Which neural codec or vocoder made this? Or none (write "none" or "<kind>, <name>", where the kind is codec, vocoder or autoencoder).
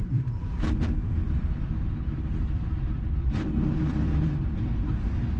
vocoder, BigVGAN v2